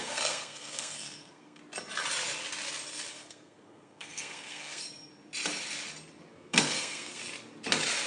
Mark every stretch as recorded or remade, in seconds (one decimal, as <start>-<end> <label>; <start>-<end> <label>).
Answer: 0.0-1.6 remade; 1.6-3.1 recorded; 3.1-5.1 remade; 5.1-6.3 recorded; 6.3-7.2 remade; 7.2-8.1 recorded